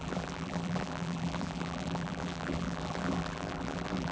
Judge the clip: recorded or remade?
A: remade